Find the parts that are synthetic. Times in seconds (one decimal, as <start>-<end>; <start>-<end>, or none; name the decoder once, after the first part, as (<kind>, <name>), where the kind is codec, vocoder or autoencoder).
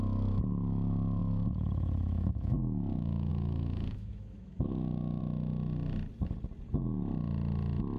0.0-5.2 (autoencoder, DAC-VAE)